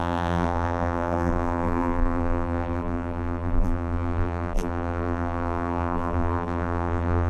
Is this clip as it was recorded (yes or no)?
no